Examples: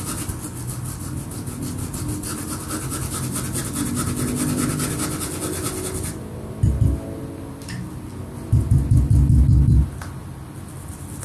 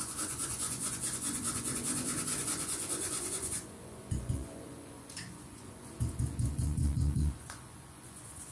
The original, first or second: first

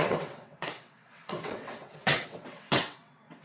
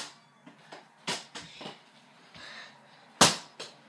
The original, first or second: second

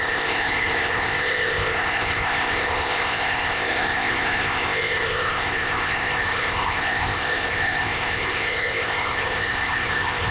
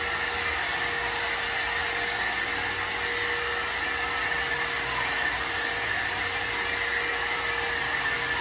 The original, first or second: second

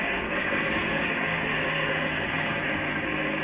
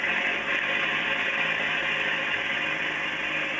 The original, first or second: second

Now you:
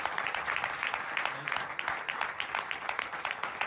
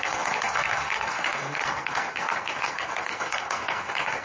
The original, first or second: first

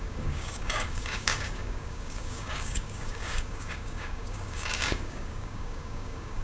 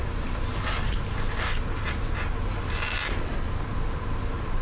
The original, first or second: second